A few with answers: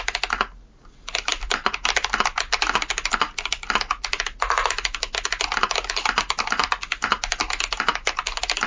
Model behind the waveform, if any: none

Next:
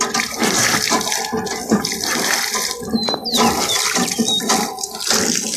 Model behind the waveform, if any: none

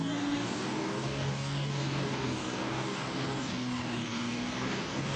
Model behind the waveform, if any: codec, DAC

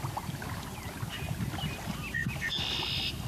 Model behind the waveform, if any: none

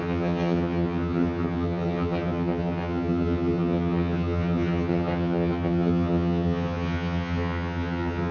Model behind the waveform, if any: vocoder, HiFi-GAN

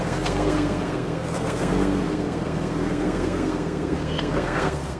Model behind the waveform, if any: codec, SNAC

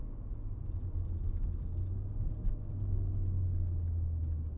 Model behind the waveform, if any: none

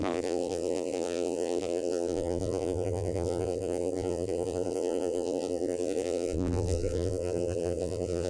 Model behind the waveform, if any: vocoder, BigVGAN v2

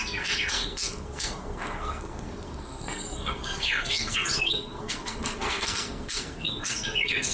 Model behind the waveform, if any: codec, SNAC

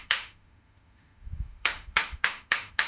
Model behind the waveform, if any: autoencoder, DAC-VAE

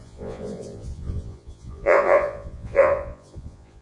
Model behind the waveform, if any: vocoder, Vocos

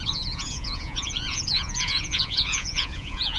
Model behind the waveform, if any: vocoder, Vocos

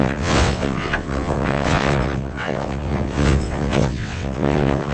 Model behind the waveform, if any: vocoder, WaveNeXt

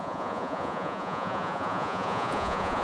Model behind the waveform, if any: vocoder, Vocos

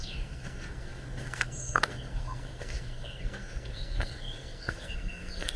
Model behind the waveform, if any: codec, SNAC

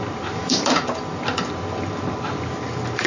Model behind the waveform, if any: vocoder, BigVGAN v2